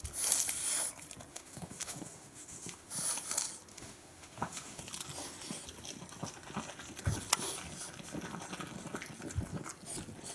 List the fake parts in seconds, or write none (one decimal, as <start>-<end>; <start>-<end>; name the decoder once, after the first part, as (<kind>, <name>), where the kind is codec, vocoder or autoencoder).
1.3-2.9 (autoencoder, DAC-VAE); 3.7-4.8